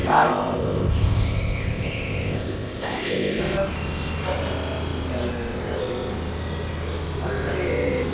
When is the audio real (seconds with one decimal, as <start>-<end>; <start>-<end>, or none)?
3.4-8.1